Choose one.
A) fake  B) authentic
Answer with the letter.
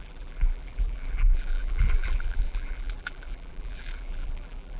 A